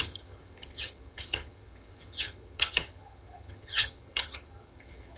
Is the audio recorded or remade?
remade